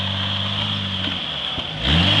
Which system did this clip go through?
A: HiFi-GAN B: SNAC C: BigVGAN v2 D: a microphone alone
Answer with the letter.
D